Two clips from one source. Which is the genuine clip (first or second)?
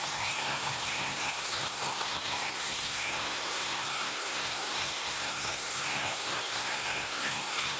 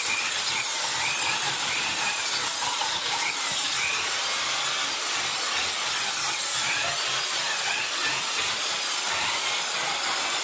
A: second